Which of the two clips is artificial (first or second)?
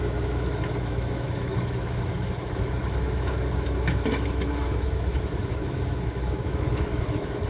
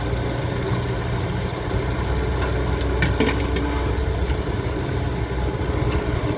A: first